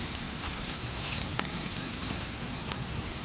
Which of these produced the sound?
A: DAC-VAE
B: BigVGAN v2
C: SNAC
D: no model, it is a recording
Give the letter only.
C